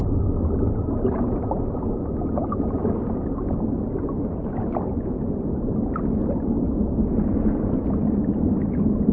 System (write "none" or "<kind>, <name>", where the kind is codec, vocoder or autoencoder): none